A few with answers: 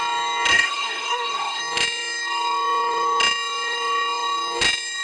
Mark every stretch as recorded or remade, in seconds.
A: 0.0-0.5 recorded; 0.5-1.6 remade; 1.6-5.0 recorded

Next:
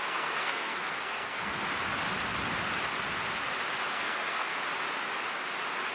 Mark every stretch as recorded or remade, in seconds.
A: 0.0-1.5 remade; 1.5-3.9 recorded; 3.9-4.5 remade; 4.5-5.9 recorded

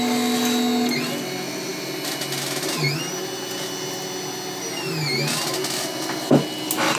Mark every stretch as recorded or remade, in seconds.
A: 0.0-7.0 recorded